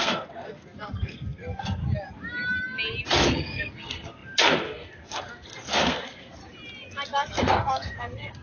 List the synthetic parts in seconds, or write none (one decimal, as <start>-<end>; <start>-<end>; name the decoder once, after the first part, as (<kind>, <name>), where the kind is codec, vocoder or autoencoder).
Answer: 0.0-1.8 (codec, SNAC); 3.3-6.4; 7.3-8.4